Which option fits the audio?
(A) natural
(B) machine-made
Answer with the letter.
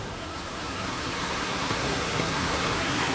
B